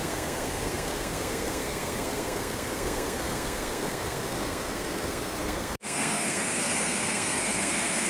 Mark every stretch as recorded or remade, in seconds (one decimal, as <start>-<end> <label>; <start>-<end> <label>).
0.0-8.1 remade